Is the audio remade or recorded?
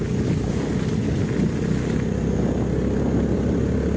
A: recorded